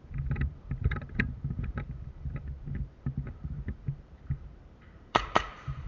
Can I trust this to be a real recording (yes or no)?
no